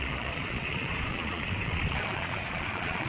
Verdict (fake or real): fake